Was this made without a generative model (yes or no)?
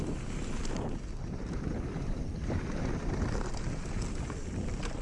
no